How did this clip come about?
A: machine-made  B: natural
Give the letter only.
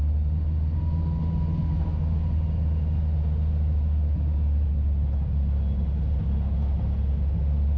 B